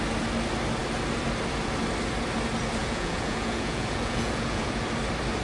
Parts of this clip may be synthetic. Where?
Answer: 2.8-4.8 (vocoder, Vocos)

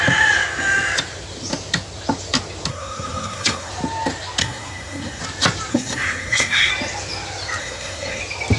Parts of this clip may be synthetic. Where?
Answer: 2.7-3.7 (codec, SNAC); 4.4-5.2; 5.7-6.7; 7.6-8.2

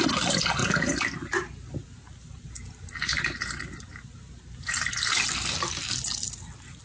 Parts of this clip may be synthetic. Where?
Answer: none

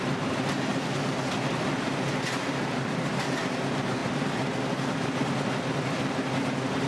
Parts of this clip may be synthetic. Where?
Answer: 0.0-6.9 (vocoder, BigVGAN v2)

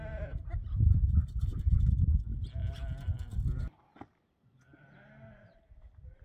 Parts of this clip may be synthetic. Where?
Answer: 1.5-2.0 (vocoder, BigVGAN v2); 2.6-3.6

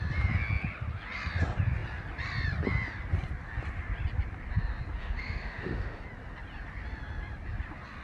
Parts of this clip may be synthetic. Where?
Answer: 5.0-6.0 (autoencoder, DAC-VAE)

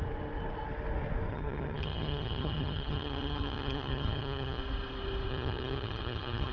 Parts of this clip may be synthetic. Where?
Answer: 1.3-4.6 (vocoder, HiFi-GAN); 5.3-6.5

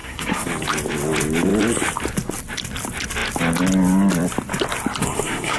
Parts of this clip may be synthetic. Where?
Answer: 0.0-0.5 (codec, SNAC); 5.0-5.6